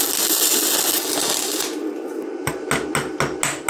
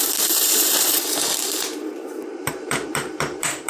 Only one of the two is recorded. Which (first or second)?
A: first